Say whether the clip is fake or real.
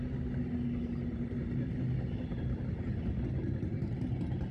real